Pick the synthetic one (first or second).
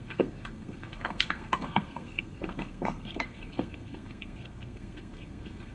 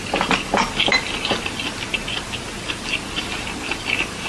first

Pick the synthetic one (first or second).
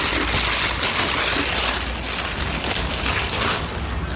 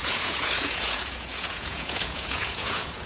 second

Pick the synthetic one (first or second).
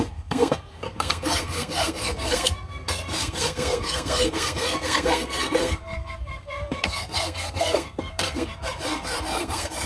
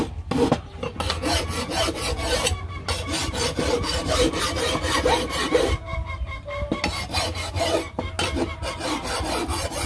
first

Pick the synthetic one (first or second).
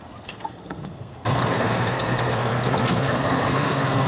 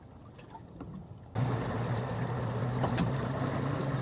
first